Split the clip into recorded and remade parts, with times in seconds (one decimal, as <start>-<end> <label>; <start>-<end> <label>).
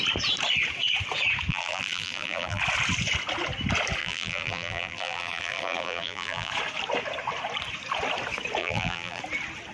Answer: 0.0-1.5 recorded; 1.5-2.6 remade; 2.6-4.0 recorded; 4.0-6.5 remade; 6.5-8.6 recorded; 8.6-9.2 remade; 9.2-9.7 recorded